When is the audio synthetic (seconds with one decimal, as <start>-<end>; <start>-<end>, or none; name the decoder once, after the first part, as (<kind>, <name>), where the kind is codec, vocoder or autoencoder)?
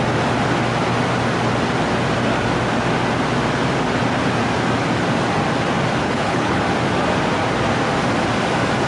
6.0-6.6 (codec, HILCodec)